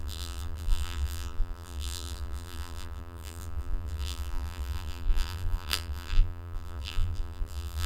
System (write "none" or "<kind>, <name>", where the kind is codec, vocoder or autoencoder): vocoder, BigVGAN v2